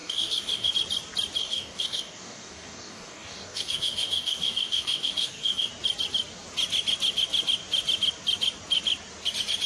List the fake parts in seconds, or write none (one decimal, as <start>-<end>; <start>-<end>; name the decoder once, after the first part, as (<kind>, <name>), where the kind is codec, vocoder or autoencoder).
0.0-0.7 (codec, DAC); 1.4-5.7